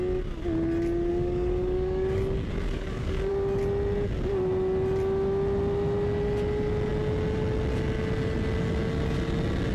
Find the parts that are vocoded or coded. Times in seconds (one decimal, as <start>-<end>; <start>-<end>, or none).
1.1-3.3